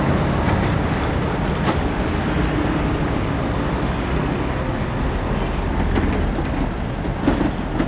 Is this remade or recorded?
recorded